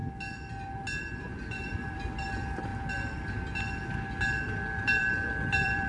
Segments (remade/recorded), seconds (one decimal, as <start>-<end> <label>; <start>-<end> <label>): 0.0-1.0 recorded; 1.0-2.7 remade; 2.7-4.4 recorded; 4.4-5.9 remade